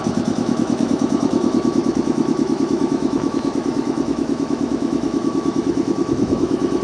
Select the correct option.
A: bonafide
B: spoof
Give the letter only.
B